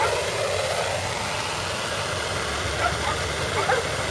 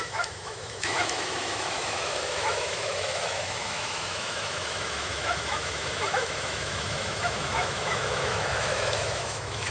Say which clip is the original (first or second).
first